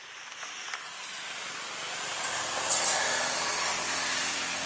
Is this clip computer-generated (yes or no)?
no